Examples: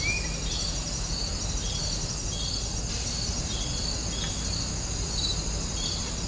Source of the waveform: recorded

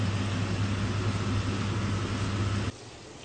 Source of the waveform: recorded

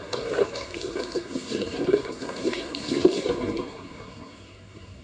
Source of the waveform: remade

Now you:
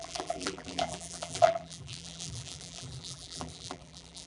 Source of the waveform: remade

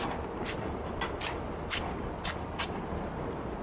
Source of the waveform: recorded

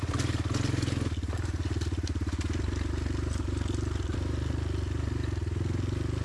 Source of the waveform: recorded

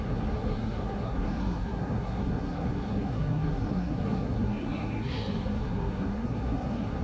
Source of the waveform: remade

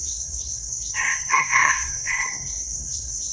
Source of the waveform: remade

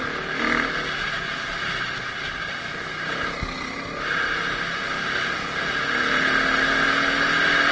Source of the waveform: recorded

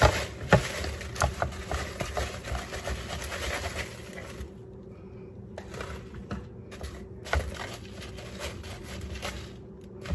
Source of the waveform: recorded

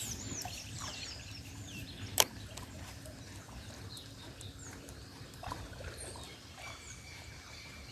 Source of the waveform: remade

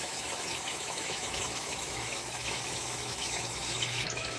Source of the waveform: remade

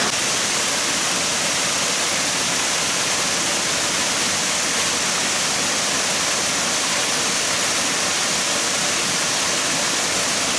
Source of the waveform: recorded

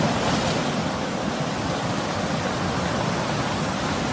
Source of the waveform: remade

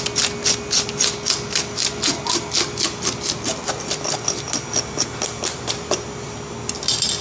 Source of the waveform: recorded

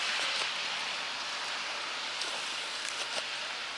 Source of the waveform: remade